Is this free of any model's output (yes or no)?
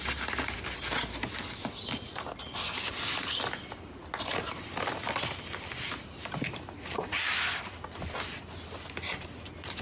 yes